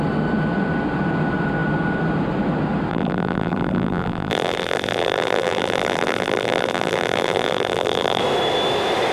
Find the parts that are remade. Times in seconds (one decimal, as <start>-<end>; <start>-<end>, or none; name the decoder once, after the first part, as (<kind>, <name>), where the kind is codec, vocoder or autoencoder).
2.9-8.2 (vocoder, BigVGAN v2)